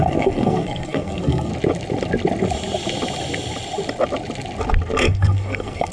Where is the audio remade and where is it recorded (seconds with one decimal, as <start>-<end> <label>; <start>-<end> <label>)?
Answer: 0.0-1.5 remade; 1.5-5.0 recorded; 5.0-5.9 remade